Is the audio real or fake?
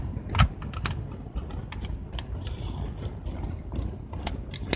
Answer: real